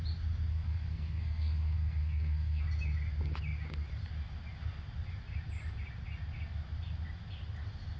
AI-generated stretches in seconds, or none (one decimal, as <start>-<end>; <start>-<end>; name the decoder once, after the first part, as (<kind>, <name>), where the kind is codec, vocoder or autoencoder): 0.5-2.6 (codec, SNAC)

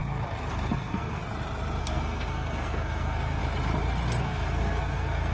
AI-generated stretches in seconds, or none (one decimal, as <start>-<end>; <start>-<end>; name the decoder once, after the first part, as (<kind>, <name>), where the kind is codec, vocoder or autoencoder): 0.5-1.2 (codec, SNAC); 1.8-3.4; 4.2-5.3